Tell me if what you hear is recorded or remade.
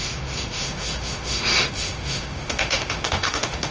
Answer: remade